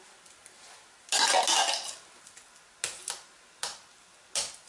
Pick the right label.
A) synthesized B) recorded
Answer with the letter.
B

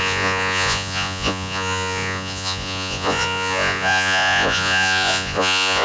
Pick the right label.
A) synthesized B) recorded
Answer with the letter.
A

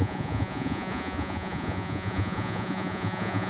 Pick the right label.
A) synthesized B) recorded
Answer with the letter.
A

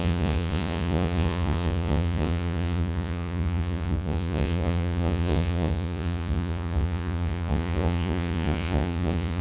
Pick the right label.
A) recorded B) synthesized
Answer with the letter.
B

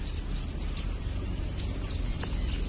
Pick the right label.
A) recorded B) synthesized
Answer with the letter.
A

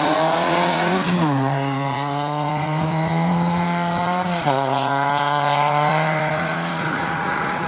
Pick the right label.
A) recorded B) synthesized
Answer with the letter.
B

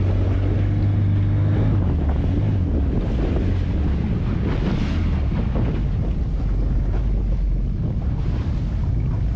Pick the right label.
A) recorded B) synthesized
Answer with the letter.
A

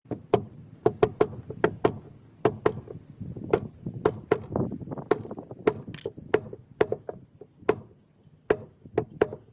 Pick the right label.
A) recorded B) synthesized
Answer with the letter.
A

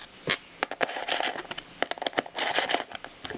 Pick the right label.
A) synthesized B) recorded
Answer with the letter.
B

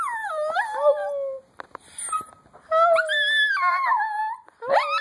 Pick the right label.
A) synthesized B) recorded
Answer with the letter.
B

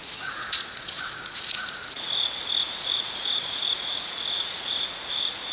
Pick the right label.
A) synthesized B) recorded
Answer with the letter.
A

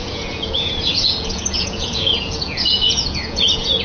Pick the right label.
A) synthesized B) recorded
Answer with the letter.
A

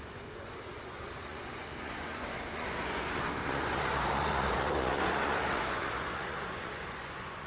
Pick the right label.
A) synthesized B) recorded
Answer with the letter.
A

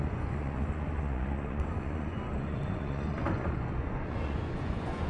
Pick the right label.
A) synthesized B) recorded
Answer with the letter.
A